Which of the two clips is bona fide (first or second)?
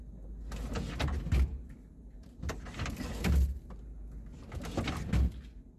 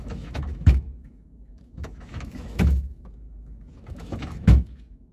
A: first